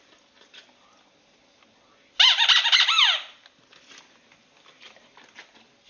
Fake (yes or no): no